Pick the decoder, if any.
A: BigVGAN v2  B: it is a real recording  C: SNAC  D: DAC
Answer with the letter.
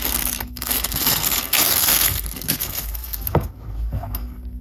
C